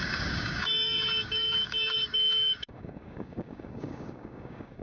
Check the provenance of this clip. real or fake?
fake